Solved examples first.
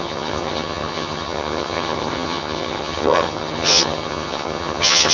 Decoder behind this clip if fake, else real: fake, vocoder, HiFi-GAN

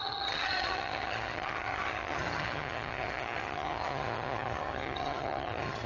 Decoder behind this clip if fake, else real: fake, vocoder, HiFi-GAN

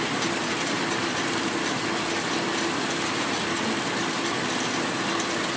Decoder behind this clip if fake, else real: real